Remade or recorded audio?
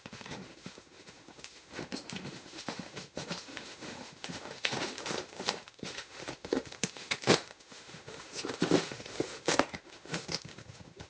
remade